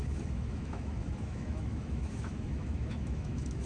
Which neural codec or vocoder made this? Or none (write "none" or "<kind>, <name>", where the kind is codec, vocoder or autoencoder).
autoencoder, DAC-VAE